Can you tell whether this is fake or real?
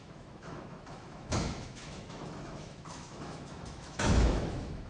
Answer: fake